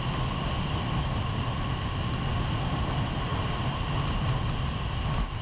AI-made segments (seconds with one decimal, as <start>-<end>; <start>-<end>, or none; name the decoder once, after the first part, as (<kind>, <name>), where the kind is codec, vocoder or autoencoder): none